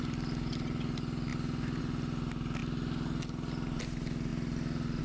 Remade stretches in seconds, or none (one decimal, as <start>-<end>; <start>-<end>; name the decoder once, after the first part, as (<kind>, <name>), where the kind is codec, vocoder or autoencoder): none